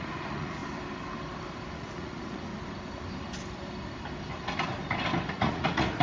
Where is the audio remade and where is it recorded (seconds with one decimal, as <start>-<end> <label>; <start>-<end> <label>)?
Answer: 0.0-0.6 remade; 0.6-1.7 recorded; 1.7-2.5 remade; 2.5-5.3 recorded; 5.3-6.0 remade